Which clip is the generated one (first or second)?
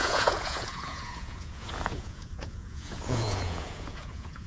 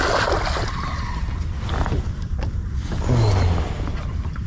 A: first